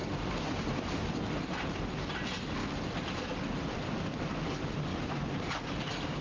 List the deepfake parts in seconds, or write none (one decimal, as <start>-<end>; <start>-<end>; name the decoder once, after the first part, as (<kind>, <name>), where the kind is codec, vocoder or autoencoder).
none

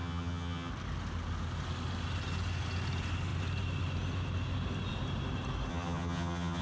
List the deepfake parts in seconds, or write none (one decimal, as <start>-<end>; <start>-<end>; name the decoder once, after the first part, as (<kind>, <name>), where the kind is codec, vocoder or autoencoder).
0.0-0.7 (vocoder, HiFi-GAN); 5.7-6.6

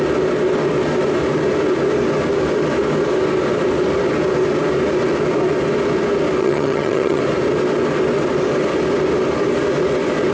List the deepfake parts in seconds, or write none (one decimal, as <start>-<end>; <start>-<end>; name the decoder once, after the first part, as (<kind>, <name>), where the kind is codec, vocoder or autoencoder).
6.4-7.2 (vocoder, HiFi-GAN)

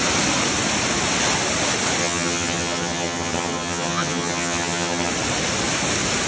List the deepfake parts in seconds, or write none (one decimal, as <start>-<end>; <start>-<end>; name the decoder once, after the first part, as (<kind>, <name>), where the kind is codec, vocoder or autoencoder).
2.0-5.1 (vocoder, HiFi-GAN)

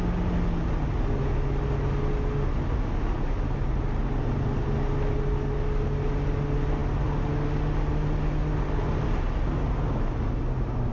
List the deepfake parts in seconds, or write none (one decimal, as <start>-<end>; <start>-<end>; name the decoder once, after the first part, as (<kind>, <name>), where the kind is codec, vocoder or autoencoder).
none

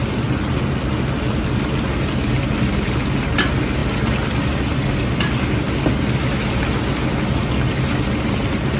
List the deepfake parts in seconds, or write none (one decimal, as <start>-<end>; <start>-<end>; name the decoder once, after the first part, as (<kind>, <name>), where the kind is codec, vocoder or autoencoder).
none

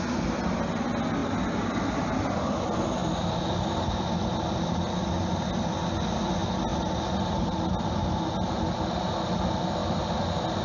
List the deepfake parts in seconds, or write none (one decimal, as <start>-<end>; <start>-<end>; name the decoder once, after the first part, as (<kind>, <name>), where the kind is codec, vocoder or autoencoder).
none